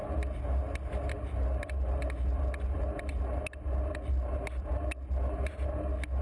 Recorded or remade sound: recorded